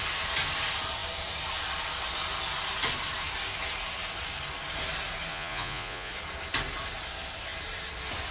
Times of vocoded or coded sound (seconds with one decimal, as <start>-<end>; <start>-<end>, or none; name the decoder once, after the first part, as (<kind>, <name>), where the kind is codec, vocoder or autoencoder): 5.3-6.1 (vocoder, Vocos)